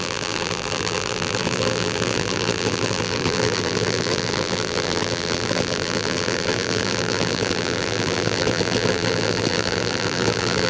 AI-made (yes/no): yes